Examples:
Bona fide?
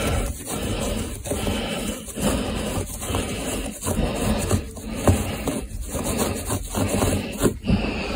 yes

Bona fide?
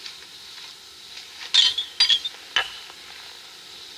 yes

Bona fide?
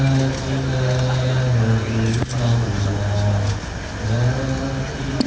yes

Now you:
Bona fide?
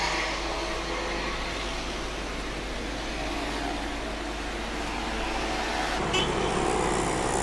yes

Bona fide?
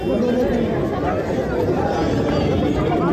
yes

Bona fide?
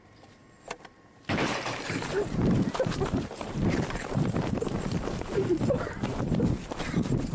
no